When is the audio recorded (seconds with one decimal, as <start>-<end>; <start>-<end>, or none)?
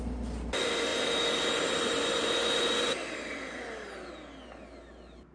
0.0-5.3